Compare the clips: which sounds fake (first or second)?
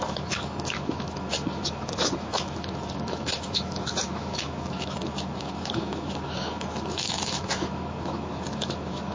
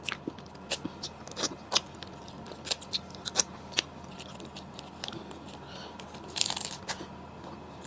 first